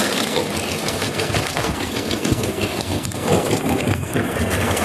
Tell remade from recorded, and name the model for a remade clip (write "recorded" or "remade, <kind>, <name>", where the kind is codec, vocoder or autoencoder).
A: remade, codec, SNAC